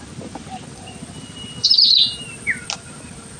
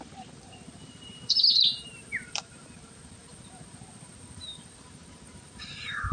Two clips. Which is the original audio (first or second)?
first